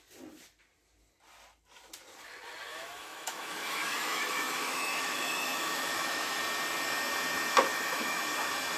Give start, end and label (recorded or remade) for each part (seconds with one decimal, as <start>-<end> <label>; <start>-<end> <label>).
0.0-2.7 recorded; 2.7-6.4 remade; 6.4-7.7 recorded; 7.7-8.2 remade; 8.2-8.8 recorded